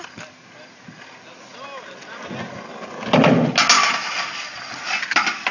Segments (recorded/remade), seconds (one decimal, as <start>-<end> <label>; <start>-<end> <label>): 0.0-5.5 recorded